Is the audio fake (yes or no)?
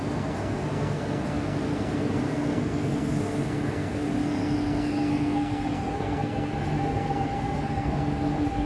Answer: yes